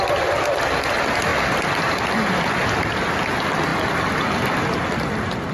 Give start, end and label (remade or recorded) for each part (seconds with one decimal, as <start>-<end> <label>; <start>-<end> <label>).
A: 0.0-5.5 recorded